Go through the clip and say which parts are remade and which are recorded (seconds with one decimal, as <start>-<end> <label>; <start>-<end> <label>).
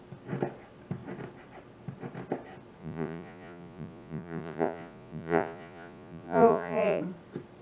0.0-2.8 recorded; 2.8-7.0 remade; 7.0-7.6 recorded